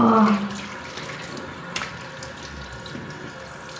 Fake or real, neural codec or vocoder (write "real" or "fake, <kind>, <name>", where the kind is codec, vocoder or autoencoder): real